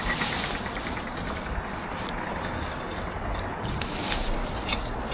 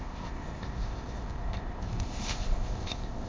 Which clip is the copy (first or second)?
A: second